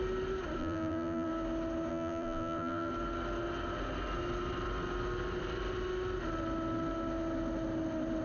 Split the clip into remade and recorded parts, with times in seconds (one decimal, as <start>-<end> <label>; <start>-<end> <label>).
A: 0.0-0.6 recorded; 0.6-1.3 remade; 1.3-1.9 recorded; 1.9-2.9 remade; 2.9-8.2 recorded